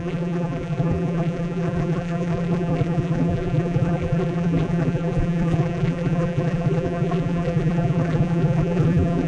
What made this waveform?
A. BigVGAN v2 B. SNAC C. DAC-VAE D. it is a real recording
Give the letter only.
A